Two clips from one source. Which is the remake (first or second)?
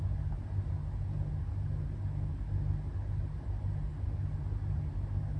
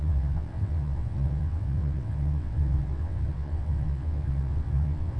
second